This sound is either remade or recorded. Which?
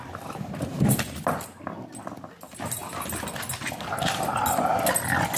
recorded